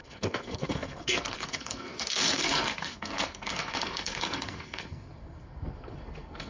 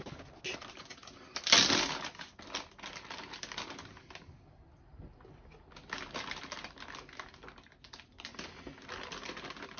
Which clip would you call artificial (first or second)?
first